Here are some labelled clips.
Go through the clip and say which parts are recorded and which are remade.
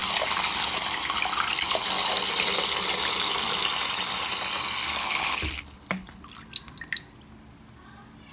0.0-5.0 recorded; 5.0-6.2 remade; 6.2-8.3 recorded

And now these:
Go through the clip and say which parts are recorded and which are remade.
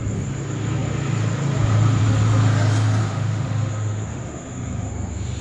0.0-3.0 recorded; 3.0-4.9 remade; 4.9-5.4 recorded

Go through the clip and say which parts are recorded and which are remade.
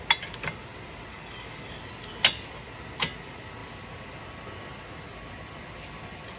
0.0-1.1 recorded; 1.1-1.8 remade; 1.8-6.4 recorded